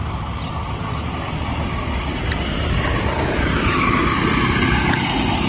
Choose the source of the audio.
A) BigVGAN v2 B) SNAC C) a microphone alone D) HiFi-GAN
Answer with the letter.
C